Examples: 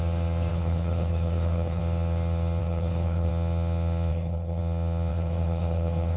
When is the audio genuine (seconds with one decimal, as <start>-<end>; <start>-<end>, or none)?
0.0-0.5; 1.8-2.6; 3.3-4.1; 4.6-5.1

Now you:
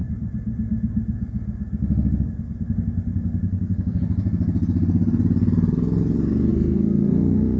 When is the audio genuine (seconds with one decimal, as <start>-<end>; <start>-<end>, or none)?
0.0-3.5; 4.0-6.5

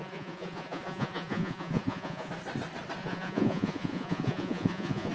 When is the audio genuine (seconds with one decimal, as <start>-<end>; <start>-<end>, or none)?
2.3-3.0

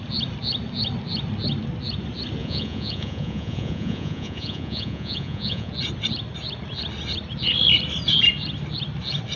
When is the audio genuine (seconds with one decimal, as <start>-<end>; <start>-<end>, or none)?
0.0-2.4; 5.7-9.4

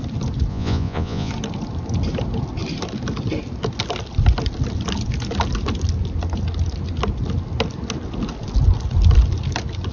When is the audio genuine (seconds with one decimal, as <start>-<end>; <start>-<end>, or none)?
0.0-0.5; 1.3-9.9

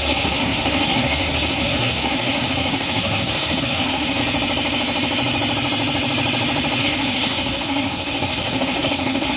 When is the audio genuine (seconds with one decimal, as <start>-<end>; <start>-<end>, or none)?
4.2-6.8